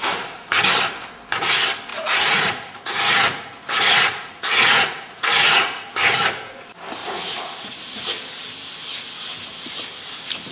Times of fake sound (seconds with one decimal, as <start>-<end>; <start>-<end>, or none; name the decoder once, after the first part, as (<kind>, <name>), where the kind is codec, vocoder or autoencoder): 1.9-5.9 (vocoder, Vocos); 7.0-7.7